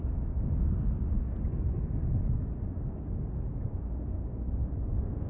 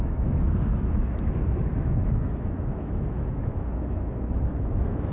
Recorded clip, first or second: first